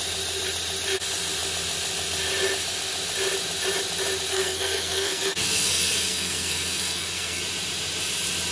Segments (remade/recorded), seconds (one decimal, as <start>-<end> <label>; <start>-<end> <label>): 0.0-4.3 recorded; 4.3-7.4 remade; 7.4-8.5 recorded